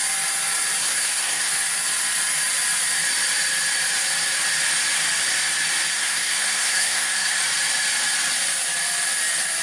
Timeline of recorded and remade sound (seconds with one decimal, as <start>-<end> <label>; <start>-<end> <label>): 0.0-0.8 recorded; 0.8-1.5 remade; 1.5-5.9 recorded; 5.9-7.4 remade; 7.4-9.6 recorded